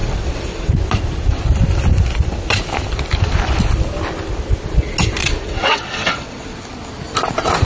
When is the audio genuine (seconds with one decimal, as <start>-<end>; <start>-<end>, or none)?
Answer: 0.7-5.2; 6.6-7.6